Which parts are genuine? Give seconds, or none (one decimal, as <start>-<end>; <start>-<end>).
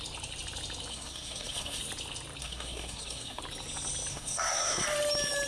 0.0-0.9; 1.8-2.4; 3.4-4.1; 4.8-5.5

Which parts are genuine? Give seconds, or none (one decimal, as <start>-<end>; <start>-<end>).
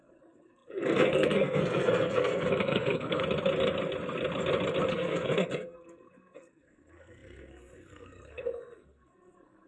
3.2-4.9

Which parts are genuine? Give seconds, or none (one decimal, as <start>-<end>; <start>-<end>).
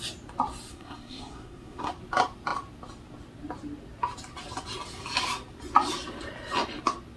0.0-0.7; 1.9-7.2